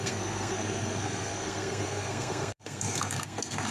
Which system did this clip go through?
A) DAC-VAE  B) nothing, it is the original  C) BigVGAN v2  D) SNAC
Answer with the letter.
D